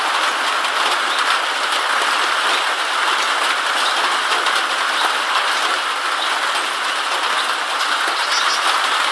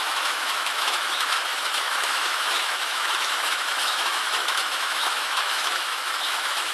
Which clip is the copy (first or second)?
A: second